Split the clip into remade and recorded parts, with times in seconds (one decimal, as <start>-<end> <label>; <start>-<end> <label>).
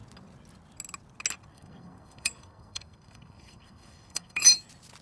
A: 0.0-1.5 recorded; 1.5-4.4 remade; 4.4-5.0 recorded